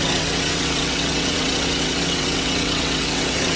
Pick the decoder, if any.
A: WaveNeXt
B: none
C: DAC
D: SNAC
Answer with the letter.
A